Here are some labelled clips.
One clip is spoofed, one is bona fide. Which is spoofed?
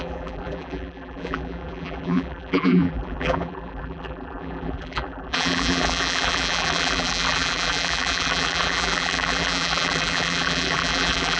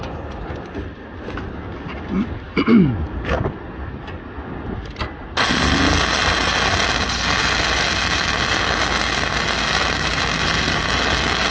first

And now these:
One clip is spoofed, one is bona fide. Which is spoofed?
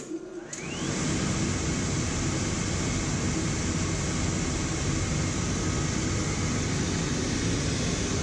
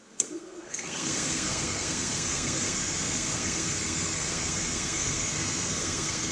second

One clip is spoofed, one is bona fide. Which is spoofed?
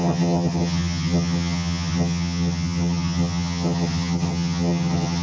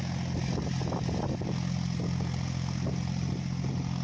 first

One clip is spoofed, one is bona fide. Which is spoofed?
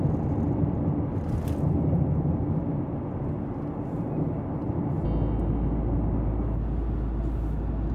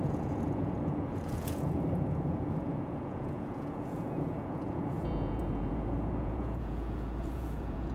second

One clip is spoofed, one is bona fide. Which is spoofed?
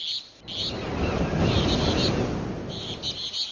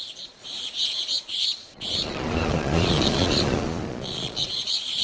second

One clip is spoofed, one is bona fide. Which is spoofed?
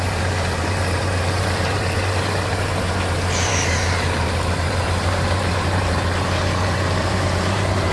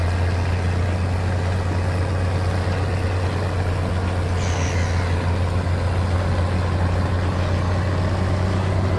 first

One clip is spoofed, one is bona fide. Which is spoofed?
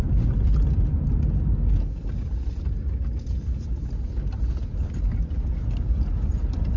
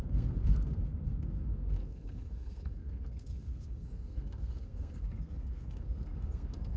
second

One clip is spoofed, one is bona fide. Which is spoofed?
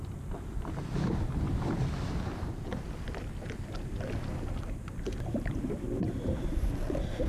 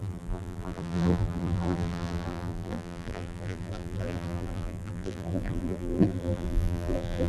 second